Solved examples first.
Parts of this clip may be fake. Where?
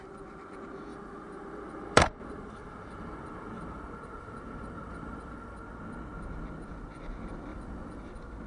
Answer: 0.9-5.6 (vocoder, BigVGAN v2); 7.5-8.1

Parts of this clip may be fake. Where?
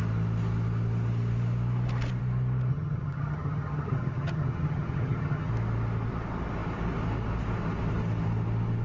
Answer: 2.7-5.5 (vocoder, HiFi-GAN)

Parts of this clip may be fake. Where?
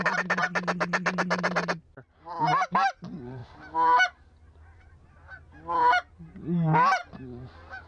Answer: none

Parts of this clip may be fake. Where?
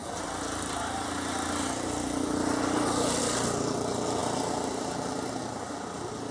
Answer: none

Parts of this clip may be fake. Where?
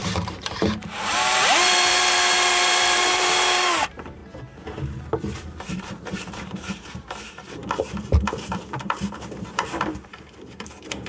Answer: 0.0-4.2 (vocoder, BigVGAN v2); 5.1-11.1